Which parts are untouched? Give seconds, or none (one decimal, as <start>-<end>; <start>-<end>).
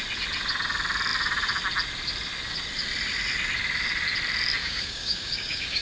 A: 0.0-4.6